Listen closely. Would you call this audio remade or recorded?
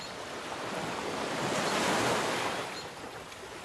recorded